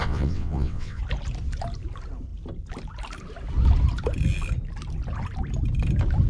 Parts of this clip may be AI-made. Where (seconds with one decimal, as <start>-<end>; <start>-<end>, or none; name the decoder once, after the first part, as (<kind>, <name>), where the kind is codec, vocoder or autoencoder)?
0.0-1.0 (vocoder, WaveNeXt)